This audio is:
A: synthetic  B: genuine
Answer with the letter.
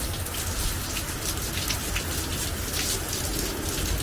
B